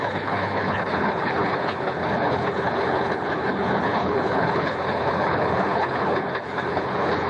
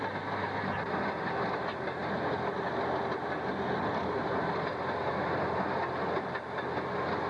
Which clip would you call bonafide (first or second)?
second